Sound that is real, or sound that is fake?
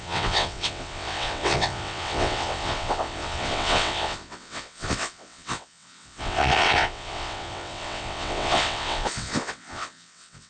fake